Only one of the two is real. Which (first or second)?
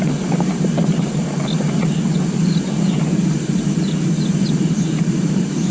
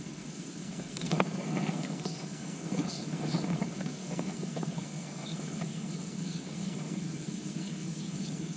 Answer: first